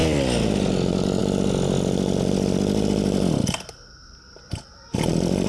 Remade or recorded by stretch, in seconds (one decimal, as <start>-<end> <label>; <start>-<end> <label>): 0.0-5.5 recorded